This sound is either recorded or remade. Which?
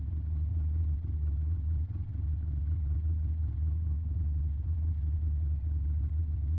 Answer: remade